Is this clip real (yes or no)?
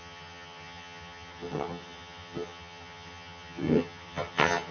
no